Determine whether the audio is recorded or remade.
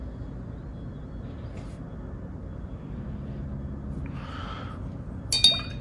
recorded